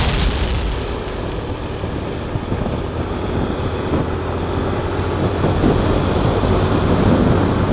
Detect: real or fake real